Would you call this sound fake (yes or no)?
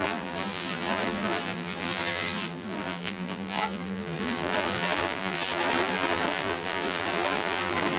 yes